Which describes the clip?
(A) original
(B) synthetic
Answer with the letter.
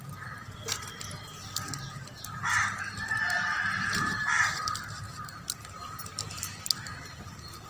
A